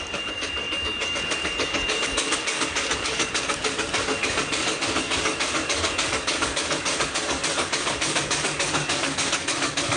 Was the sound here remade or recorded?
remade